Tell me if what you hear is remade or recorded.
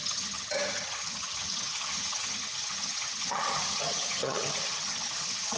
remade